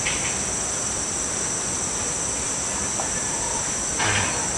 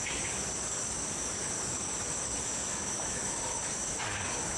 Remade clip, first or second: second